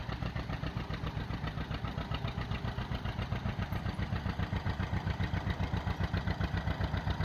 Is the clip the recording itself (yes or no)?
yes